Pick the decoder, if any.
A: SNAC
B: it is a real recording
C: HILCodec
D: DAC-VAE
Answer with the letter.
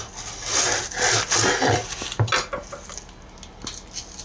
B